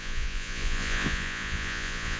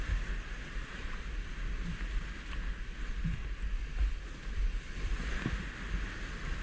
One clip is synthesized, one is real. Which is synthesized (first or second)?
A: first